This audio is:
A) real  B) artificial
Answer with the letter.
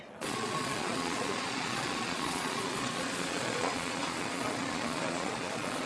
B